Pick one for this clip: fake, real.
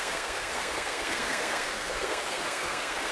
fake